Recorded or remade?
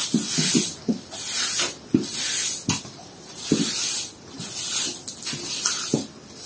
recorded